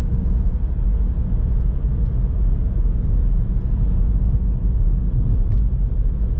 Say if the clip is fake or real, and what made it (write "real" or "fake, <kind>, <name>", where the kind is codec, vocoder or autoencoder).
fake, vocoder, Vocos